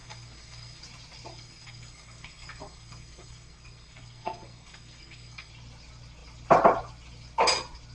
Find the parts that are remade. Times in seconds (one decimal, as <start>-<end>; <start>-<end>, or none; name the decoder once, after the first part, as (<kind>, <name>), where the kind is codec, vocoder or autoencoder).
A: 0.0-0.8 (codec, SNAC); 1.3-5.5